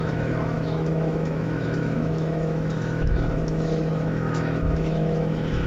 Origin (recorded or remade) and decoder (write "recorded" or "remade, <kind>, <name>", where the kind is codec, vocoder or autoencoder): remade, autoencoder, DAC-VAE